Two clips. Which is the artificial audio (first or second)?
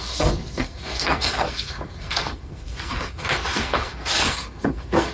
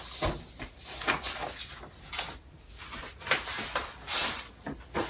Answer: first